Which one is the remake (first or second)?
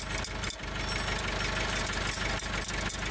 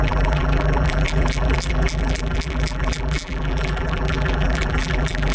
second